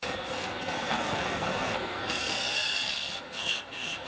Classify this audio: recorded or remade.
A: remade